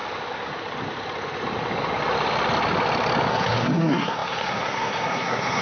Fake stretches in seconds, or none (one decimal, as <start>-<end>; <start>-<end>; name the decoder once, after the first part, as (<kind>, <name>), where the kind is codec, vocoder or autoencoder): 3.3-5.6 (codec, SNAC)

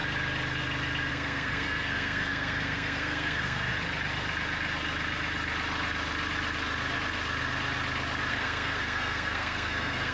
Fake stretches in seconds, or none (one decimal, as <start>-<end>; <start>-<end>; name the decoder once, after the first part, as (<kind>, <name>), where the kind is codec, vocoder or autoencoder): 1.1-3.7 (codec, SNAC); 8.3-10.1